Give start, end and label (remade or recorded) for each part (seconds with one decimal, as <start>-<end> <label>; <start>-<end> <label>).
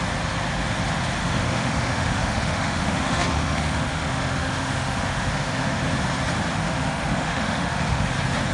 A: 0.0-1.2 recorded; 1.2-5.8 remade; 5.8-6.6 recorded; 6.6-8.1 remade; 8.1-8.5 recorded